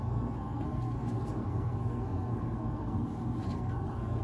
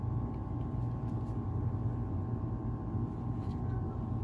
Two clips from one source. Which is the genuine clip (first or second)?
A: second